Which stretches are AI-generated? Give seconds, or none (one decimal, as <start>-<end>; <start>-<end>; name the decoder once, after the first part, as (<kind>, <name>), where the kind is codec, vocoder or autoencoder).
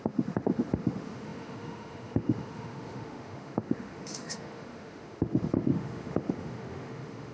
0.0-7.3 (autoencoder, DAC-VAE)